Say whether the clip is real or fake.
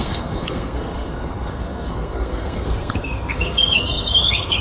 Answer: fake